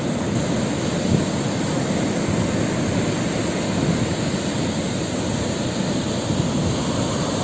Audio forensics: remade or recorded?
recorded